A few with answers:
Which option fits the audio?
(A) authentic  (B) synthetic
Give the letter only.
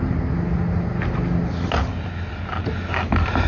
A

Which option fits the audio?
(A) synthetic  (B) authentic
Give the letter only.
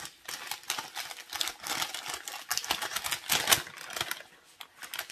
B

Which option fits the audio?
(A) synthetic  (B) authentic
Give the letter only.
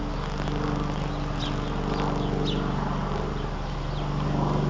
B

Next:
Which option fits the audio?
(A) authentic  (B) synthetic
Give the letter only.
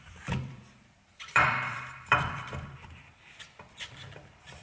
B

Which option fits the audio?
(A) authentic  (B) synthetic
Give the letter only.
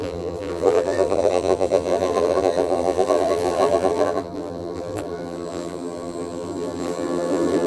B